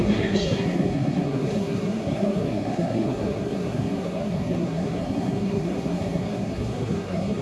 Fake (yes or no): yes